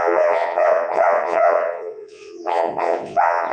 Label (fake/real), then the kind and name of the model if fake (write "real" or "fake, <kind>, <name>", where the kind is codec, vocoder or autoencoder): fake, vocoder, Vocos